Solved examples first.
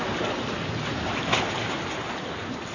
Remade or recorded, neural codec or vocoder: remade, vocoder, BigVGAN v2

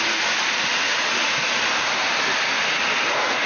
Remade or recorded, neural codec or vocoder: recorded